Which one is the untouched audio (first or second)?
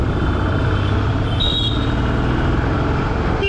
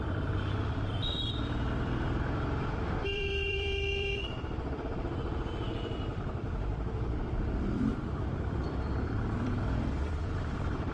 first